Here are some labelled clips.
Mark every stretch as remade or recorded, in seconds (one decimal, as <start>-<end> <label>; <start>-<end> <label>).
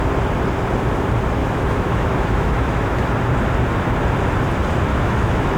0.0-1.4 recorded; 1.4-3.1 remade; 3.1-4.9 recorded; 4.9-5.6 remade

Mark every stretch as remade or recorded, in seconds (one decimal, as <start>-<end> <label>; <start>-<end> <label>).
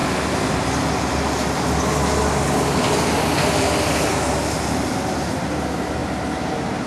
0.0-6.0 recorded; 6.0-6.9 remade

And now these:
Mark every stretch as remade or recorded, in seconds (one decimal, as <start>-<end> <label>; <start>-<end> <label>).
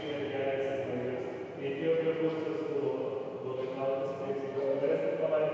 0.0-5.5 recorded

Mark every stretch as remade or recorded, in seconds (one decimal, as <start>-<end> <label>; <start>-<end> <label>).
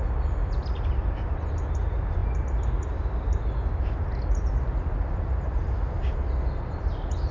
0.0-7.3 recorded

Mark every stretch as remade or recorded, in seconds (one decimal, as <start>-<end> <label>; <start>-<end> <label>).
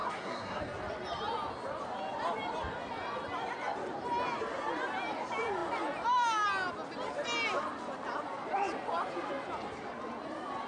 0.0-0.6 remade; 0.6-10.7 recorded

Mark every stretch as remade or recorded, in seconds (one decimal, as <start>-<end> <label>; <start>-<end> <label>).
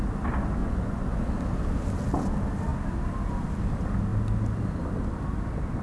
0.0-0.6 recorded; 0.6-1.2 remade; 1.2-5.8 recorded